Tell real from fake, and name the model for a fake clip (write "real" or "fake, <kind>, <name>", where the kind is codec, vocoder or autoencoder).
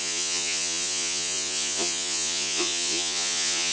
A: fake, vocoder, Vocos